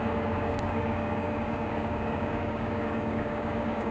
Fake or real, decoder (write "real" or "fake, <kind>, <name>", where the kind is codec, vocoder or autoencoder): fake, codec, DAC